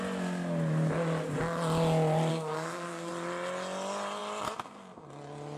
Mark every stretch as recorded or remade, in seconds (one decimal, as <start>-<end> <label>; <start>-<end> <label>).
0.0-2.3 recorded; 2.3-3.1 remade; 3.1-5.6 recorded

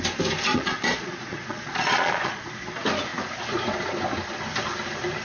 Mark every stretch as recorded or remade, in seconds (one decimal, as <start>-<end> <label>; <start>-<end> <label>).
0.0-0.5 recorded; 0.5-2.4 remade; 2.4-5.2 recorded

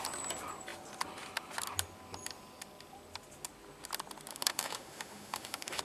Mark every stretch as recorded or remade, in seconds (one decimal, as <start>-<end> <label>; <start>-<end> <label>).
0.0-4.3 recorded; 4.3-5.8 remade

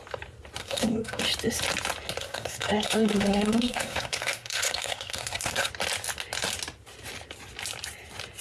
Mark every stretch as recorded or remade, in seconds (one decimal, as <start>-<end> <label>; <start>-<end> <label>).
0.0-0.6 recorded; 0.6-1.2 remade; 1.2-2.2 recorded; 2.2-5.7 remade; 5.7-8.4 recorded

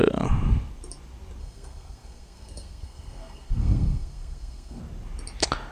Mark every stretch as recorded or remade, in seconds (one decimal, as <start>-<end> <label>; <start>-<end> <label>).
0.0-1.4 recorded; 1.4-4.8 remade; 4.8-5.7 recorded